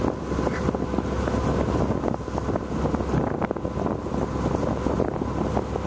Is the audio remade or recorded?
recorded